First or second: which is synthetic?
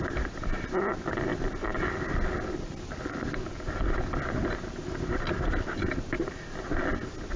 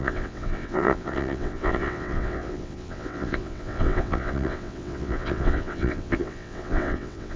second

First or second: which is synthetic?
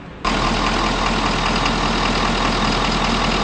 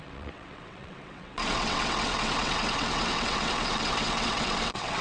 second